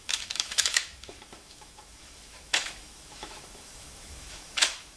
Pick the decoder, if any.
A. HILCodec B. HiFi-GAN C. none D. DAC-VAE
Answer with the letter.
D